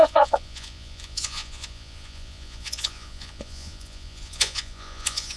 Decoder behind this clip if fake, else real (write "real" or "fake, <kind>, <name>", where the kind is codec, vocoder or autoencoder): fake, vocoder, Vocos